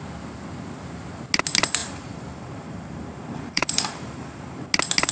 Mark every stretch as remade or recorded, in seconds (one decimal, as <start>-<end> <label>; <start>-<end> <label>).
0.0-1.8 recorded; 1.8-4.6 remade; 4.6-5.1 recorded